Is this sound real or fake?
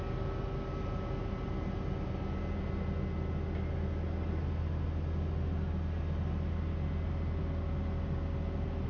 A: real